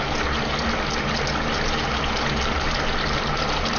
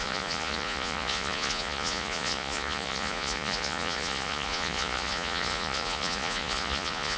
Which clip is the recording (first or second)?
first